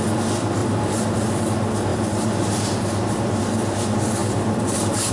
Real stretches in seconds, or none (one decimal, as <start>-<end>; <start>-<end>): 0.0-0.6; 1.4-1.9; 3.4-4.2